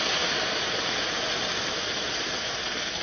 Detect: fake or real real